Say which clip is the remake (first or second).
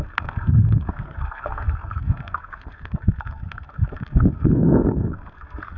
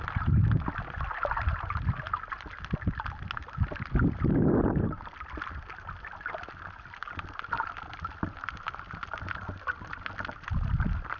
first